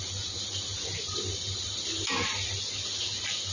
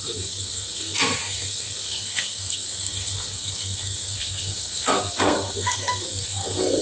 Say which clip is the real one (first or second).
first